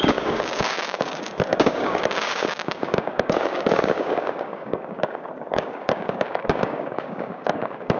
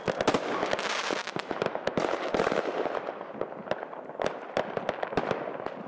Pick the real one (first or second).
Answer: second